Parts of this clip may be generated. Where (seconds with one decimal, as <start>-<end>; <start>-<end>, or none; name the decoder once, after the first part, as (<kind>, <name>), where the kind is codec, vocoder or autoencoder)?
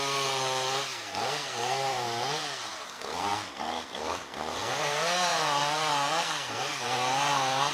0.0-7.7 (codec, SNAC)